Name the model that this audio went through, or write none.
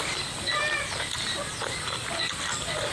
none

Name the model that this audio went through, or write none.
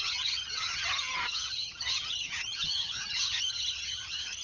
vocoder, HiFi-GAN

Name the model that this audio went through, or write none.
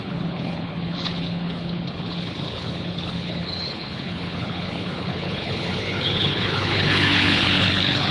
codec, HILCodec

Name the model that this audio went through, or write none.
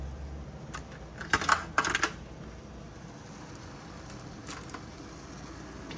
none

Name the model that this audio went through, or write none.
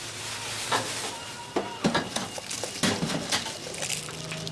none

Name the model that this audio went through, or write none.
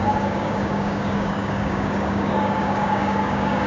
codec, DAC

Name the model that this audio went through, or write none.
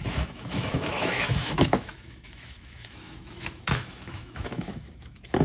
autoencoder, DAC-VAE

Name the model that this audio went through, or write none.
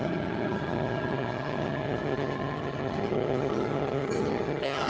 vocoder, HiFi-GAN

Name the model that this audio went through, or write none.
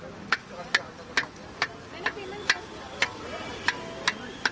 none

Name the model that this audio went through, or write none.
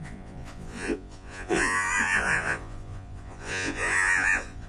vocoder, Vocos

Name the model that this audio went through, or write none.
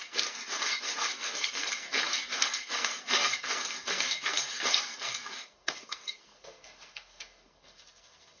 codec, SNAC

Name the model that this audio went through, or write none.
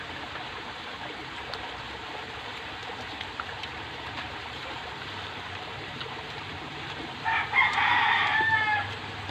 vocoder, BigVGAN v2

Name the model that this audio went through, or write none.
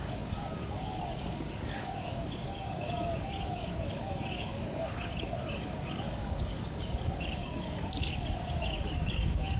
codec, DAC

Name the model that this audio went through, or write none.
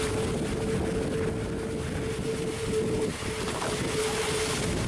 none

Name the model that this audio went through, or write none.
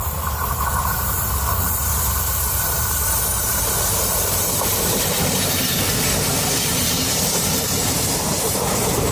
vocoder, BigVGAN v2